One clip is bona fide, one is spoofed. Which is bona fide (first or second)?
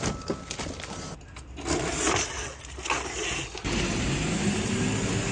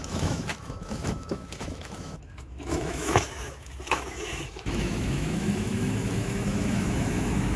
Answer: first